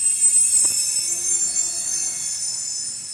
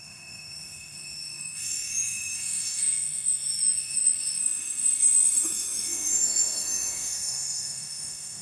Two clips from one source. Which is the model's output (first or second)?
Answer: second